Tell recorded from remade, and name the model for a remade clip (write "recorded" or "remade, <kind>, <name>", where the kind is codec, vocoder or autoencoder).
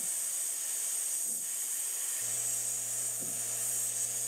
recorded